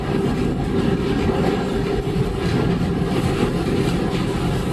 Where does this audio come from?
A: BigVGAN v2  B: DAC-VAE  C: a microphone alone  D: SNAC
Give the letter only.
C